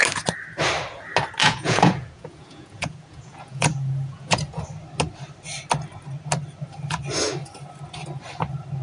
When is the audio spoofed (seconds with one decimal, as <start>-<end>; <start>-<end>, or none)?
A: 1.4-4.6